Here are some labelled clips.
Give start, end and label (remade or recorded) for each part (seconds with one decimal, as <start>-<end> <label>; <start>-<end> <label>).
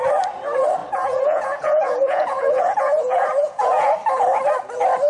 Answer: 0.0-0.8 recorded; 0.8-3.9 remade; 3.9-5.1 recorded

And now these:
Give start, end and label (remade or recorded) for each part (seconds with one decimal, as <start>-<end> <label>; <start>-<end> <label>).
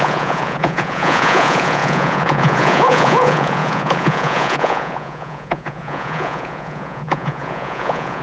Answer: 0.0-8.2 remade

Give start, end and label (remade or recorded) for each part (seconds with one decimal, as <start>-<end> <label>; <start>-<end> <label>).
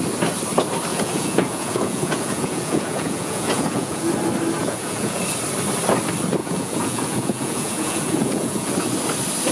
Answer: 0.0-0.9 recorded; 0.9-4.1 remade; 4.1-4.6 recorded; 4.6-5.2 remade; 5.2-6.4 recorded; 6.4-8.7 remade; 8.7-9.5 recorded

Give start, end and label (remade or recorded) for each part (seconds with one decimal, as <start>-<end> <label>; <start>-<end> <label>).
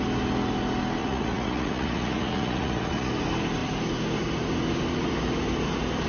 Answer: 0.0-1.0 recorded; 1.0-3.1 remade; 3.1-6.1 recorded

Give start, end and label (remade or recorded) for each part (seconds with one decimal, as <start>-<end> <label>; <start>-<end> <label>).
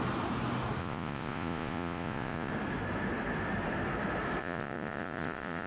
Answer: 0.0-0.8 recorded; 0.8-2.5 remade; 2.5-4.4 recorded; 4.4-5.7 remade